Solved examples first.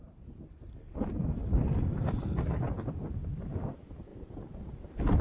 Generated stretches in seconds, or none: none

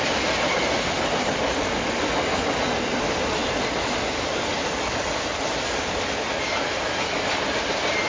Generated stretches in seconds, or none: none